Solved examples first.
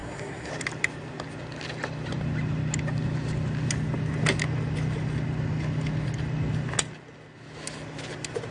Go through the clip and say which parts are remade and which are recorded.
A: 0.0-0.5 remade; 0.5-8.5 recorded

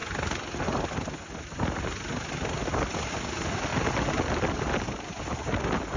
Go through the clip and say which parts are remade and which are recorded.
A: 0.0-6.0 recorded

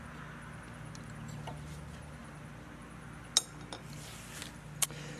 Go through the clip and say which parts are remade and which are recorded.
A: 0.0-5.2 recorded

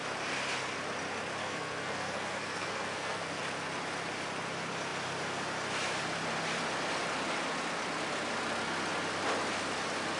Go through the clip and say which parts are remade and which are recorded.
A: 0.0-1.4 recorded; 1.4-3.4 remade; 3.4-10.2 recorded